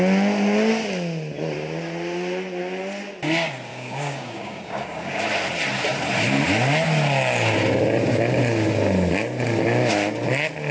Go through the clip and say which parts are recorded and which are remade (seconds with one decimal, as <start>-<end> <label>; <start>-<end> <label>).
0.0-3.7 recorded; 3.7-5.2 remade; 5.2-10.7 recorded